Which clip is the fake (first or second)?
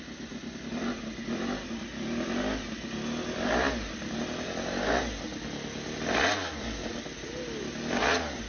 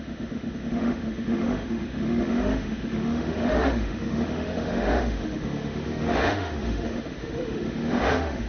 second